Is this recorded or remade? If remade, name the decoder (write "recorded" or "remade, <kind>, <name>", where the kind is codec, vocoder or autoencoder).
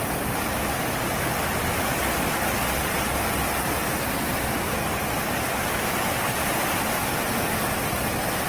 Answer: recorded